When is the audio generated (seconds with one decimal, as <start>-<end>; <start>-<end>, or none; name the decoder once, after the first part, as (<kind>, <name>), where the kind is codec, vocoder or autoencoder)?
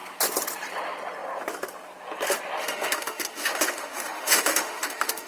2.6-5.3 (autoencoder, DAC-VAE)